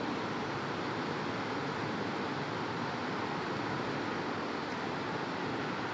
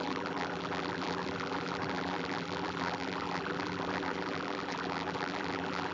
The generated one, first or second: second